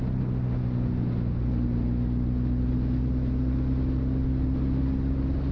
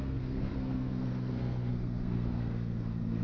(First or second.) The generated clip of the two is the second